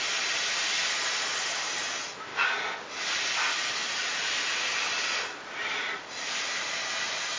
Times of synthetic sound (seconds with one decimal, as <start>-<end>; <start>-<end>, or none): none